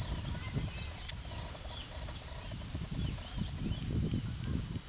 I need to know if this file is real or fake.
real